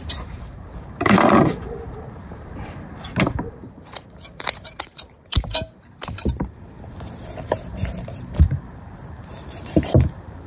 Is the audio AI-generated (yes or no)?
yes